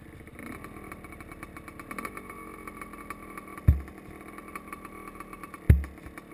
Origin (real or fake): real